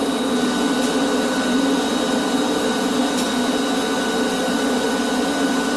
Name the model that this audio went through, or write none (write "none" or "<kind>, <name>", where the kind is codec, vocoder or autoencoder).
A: none